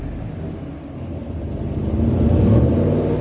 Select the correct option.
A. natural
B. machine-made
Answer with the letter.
A